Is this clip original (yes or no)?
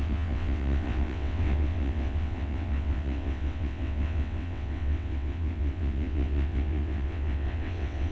no